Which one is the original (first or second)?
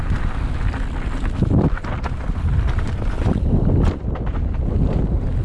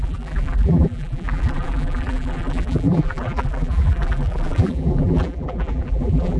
first